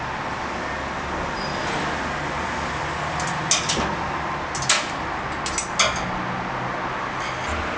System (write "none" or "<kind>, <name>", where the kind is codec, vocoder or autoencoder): none